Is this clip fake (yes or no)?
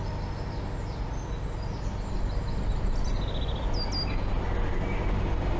no